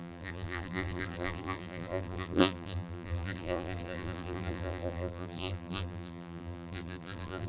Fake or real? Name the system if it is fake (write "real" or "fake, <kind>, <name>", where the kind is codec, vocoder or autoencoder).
fake, vocoder, BigVGAN v2